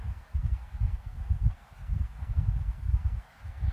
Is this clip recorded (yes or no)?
no